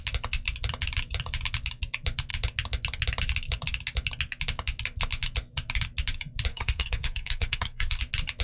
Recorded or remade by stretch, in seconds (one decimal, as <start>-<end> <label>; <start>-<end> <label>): 0.0-6.5 recorded; 6.5-8.0 remade; 8.0-8.4 recorded